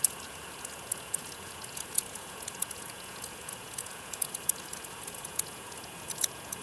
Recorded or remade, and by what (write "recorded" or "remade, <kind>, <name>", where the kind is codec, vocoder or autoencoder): remade, vocoder, Vocos